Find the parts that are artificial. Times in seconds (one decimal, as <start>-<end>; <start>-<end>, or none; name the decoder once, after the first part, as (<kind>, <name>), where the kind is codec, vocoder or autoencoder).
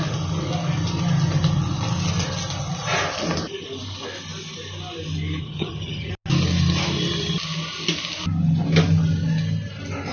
5.4-6.1 (vocoder, HiFi-GAN)